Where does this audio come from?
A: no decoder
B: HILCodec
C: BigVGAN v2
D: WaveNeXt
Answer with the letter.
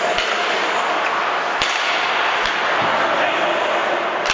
A